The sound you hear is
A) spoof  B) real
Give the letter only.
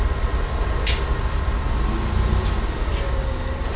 B